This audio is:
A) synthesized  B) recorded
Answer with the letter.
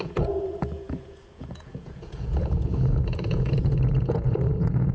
A